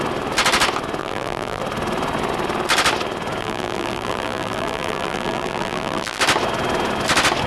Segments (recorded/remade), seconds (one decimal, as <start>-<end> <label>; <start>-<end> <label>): 0.0-1.0 recorded; 1.0-1.6 remade; 1.6-3.4 recorded; 3.4-6.2 remade; 6.2-7.5 recorded